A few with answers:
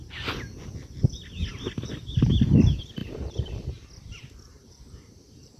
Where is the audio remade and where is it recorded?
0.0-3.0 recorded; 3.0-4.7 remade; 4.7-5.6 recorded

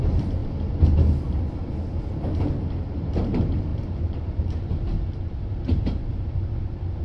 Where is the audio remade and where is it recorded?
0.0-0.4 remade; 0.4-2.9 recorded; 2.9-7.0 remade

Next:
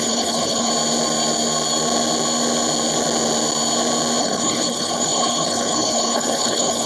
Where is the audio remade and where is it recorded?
0.0-0.7 remade; 0.7-4.2 recorded; 4.2-6.9 remade